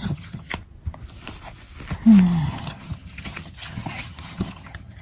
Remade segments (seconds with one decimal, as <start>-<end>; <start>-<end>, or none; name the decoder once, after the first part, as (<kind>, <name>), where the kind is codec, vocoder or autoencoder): 0.0-0.5 (vocoder, HiFi-GAN); 2.4-5.0